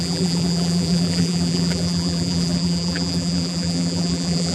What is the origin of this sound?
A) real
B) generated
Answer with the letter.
B